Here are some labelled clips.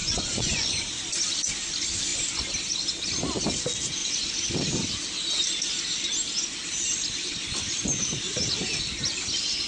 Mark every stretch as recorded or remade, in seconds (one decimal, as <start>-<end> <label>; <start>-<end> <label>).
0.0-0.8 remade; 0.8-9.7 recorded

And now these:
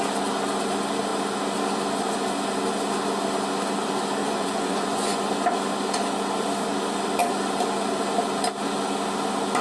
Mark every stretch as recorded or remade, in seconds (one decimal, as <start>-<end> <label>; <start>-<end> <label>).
0.0-4.2 recorded; 4.2-5.3 remade; 5.3-9.6 recorded

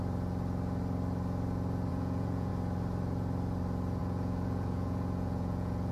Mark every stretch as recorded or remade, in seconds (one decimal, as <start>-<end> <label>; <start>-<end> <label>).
0.0-1.9 recorded; 1.9-2.5 remade; 2.5-4.0 recorded; 4.0-5.9 remade